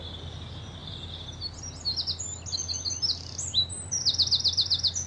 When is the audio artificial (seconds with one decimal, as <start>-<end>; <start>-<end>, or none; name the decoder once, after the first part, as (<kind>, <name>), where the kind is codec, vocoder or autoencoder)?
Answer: none